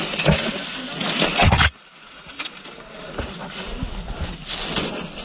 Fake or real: real